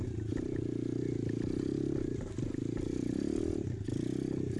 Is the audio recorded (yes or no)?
yes